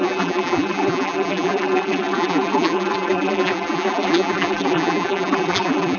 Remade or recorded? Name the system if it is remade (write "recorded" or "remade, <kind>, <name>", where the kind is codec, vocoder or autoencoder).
remade, vocoder, BigVGAN v2